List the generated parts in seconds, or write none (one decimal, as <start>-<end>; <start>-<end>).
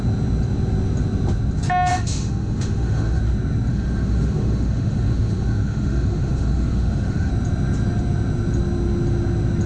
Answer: 1.9-3.2; 3.7-7.3